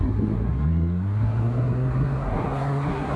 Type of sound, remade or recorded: remade